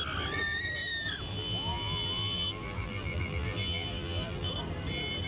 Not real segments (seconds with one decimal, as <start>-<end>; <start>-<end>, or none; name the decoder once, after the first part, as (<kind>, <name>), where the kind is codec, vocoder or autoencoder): 1.3-4.5 (vocoder, BigVGAN v2)